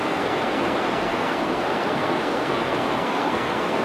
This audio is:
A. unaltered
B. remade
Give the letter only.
B